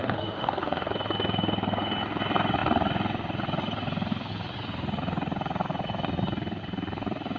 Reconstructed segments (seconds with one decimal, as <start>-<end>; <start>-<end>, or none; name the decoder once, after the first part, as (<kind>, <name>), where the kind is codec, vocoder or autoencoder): 0.0-0.9 (autoencoder, DAC-VAE)